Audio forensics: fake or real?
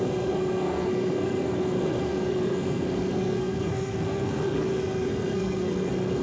fake